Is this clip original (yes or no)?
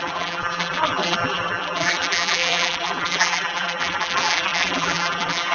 no